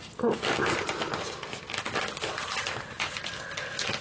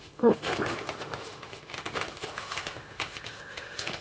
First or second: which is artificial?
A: second